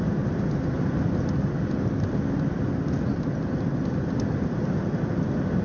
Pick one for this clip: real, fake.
real